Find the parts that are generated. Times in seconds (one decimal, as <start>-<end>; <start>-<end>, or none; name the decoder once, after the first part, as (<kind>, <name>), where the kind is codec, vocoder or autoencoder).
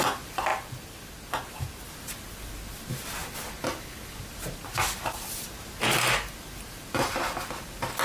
none